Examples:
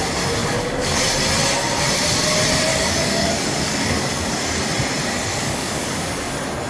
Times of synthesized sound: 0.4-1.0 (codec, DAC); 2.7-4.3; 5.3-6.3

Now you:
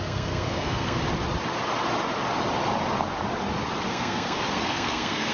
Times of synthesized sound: 0.0-1.0 (codec, SNAC); 3.9-5.3

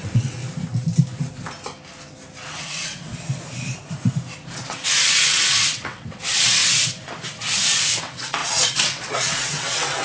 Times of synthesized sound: 0.0-0.4 (vocoder, WaveNeXt); 2.6-3.1; 5.0-6.6; 8.0-10.0

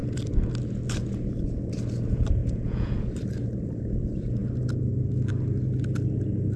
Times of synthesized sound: 2.4-3.1 (vocoder, Vocos)

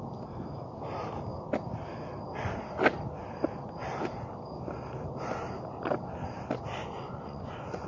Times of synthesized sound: 6.8-7.9 (vocoder, Vocos)

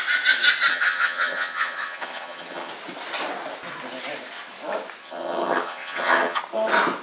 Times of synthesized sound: 0.7-2.7 (vocoder, HiFi-GAN); 5.0-6.4

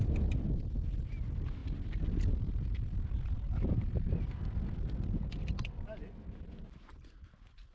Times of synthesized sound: none